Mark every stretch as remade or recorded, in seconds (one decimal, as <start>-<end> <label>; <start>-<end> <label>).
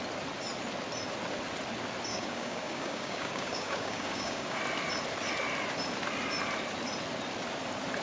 0.0-2.1 recorded; 2.1-4.6 remade; 4.6-8.0 recorded